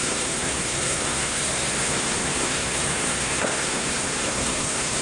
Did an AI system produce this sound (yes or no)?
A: yes